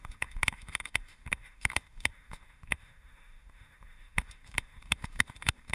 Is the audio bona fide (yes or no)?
no